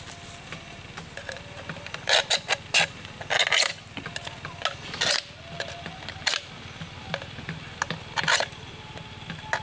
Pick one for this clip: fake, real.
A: real